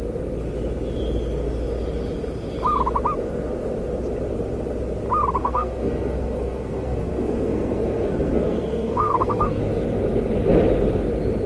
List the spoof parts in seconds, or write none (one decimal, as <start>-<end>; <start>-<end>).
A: 5.4-9.6